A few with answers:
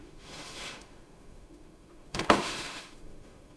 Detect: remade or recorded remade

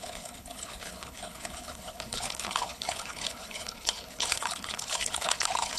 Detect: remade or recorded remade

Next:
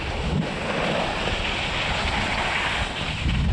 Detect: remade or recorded recorded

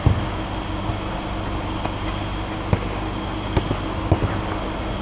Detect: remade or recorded recorded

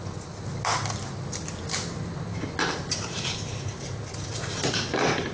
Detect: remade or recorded recorded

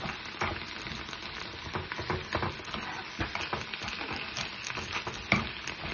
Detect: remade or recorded recorded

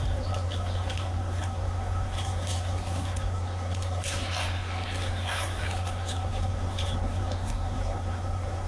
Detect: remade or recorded remade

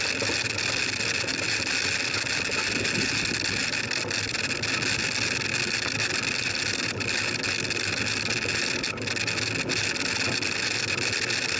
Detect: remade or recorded recorded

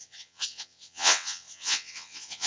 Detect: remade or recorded remade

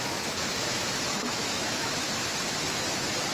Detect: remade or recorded remade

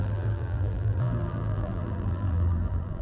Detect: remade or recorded remade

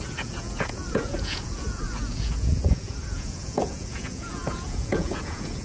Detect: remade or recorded remade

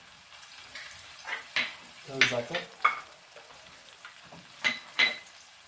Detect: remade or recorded recorded